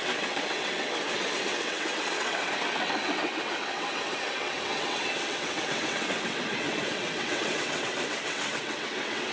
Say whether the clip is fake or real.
fake